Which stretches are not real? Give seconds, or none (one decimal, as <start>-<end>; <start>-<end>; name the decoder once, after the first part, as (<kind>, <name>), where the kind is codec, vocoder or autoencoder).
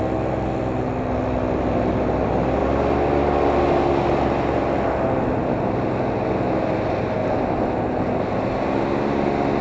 none